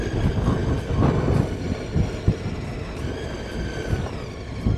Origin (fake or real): real